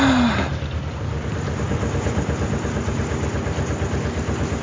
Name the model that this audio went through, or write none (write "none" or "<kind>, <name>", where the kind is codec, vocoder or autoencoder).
none